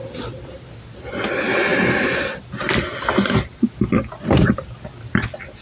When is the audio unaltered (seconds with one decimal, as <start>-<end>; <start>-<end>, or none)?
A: 0.0-5.6